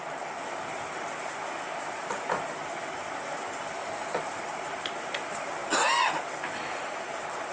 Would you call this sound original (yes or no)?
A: yes